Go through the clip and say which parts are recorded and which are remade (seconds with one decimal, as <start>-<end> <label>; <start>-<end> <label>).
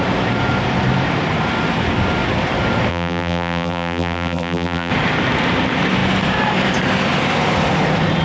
0.0-2.9 recorded; 2.9-4.9 remade; 4.9-8.2 recorded